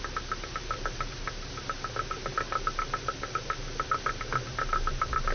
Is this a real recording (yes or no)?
yes